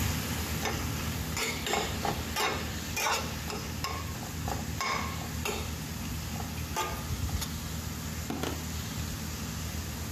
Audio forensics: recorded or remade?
recorded